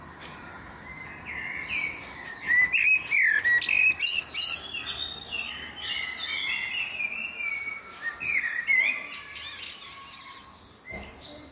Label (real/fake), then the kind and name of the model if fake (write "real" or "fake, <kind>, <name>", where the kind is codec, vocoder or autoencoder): real